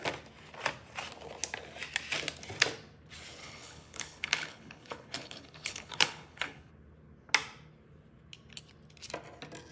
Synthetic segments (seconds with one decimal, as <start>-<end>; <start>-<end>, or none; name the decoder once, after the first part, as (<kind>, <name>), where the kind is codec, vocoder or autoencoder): 3.4-6.7 (codec, HILCodec)